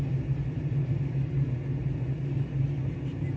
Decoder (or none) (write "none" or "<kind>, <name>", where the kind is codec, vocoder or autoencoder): none